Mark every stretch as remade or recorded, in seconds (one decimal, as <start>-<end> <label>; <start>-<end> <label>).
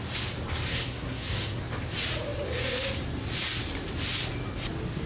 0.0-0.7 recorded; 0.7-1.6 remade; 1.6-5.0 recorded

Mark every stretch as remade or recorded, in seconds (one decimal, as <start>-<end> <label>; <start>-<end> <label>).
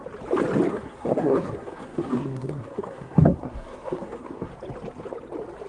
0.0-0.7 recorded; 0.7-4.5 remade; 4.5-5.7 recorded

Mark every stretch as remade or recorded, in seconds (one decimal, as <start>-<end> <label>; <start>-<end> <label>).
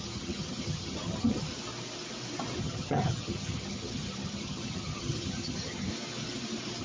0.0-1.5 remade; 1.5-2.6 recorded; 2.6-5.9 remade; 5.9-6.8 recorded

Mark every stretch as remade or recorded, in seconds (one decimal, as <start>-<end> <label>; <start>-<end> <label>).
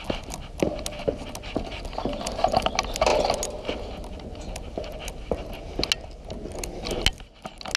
0.0-7.8 recorded